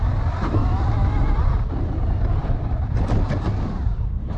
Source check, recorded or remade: recorded